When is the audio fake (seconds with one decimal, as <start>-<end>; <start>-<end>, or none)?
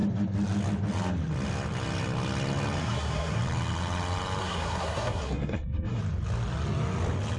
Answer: 2.8-3.4; 4.4-6.0